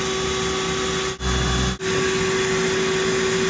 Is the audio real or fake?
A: real